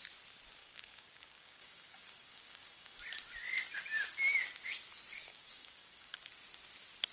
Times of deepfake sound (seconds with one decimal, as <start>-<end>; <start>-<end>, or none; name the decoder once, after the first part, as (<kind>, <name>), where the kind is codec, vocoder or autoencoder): 0.6-3.0 (codec, DAC); 5.3-6.2